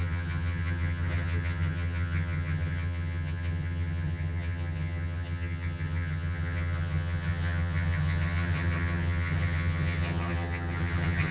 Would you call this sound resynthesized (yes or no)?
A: yes